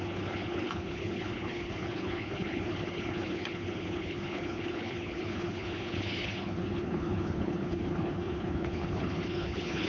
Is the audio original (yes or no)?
no